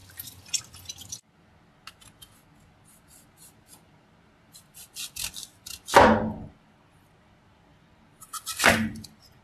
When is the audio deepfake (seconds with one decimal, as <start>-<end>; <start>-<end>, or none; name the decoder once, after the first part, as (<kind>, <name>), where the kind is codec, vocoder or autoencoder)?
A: 0.0-0.6 (vocoder, BigVGAN v2); 7.7-9.4